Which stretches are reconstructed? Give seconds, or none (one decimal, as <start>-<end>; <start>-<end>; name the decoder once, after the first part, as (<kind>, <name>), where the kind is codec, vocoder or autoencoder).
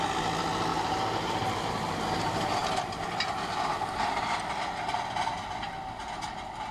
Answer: 0.7-1.7 (vocoder, BigVGAN v2)